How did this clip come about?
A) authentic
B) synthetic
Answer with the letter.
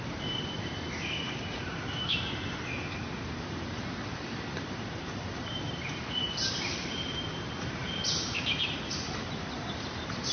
B